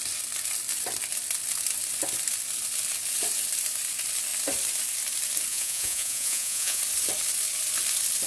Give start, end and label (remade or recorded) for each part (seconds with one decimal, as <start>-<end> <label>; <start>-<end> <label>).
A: 0.0-5.5 recorded; 5.5-6.8 remade; 6.8-8.3 recorded